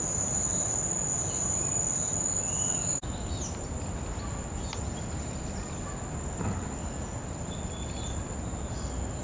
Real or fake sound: real